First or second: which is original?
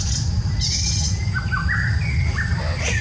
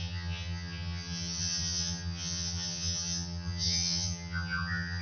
first